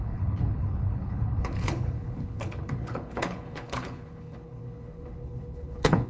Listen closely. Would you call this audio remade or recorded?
remade